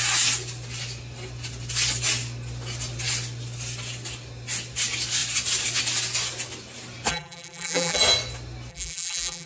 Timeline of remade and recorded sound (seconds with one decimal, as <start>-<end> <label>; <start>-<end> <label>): 0.0-7.1 recorded; 7.1-8.0 remade; 8.0-8.7 recorded; 8.7-9.5 remade